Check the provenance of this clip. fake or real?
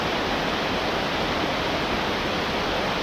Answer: real